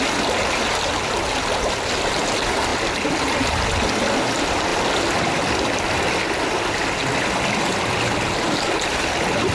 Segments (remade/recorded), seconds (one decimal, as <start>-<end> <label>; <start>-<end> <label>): 0.0-9.5 recorded